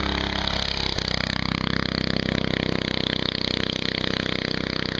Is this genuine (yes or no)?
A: yes